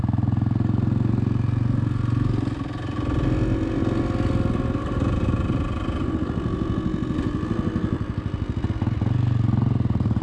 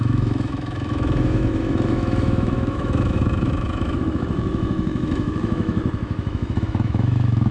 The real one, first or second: first